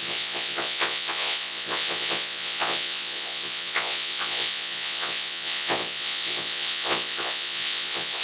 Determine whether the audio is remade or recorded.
remade